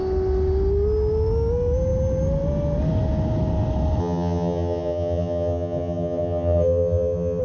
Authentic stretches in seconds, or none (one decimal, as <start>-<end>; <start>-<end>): 0.0-4.0